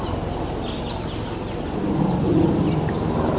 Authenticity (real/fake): real